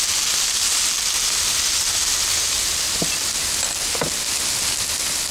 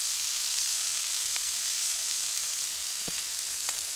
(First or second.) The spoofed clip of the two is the second